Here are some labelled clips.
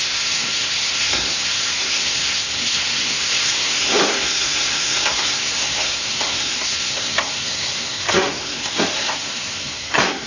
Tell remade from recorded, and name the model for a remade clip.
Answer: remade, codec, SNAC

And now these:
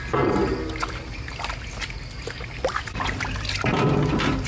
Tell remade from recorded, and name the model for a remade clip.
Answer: recorded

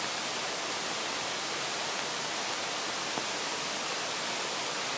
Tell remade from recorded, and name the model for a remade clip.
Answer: recorded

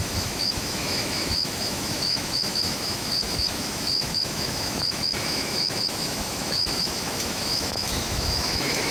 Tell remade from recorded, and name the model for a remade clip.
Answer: remade, autoencoder, DAC-VAE